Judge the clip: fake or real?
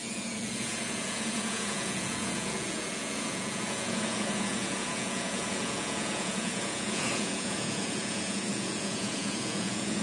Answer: fake